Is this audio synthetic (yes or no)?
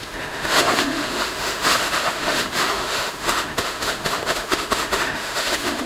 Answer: yes